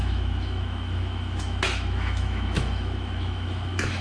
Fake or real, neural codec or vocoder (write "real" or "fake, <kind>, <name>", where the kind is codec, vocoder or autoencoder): fake, autoencoder, DAC-VAE